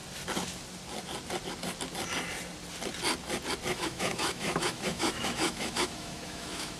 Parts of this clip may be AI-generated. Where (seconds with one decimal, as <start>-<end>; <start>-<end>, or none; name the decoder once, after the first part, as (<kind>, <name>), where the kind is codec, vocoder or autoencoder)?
3.7-6.8 (autoencoder, DAC-VAE)